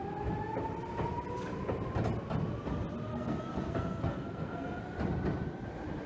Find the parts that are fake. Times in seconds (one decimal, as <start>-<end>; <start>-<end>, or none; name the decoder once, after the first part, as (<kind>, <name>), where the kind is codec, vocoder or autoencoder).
3.1-4.8 (codec, SNAC)